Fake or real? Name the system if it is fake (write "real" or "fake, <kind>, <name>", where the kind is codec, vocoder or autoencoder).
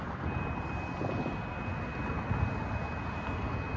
real